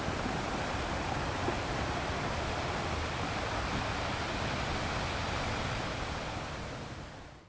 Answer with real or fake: real